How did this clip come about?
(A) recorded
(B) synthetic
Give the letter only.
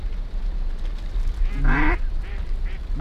A